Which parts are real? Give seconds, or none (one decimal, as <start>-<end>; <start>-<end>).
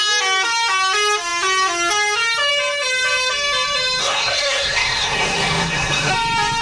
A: 0.0-4.0; 6.1-6.6